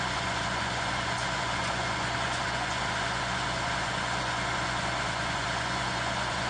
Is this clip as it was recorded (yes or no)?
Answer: no